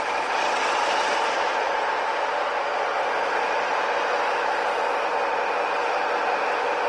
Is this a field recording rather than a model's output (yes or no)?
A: yes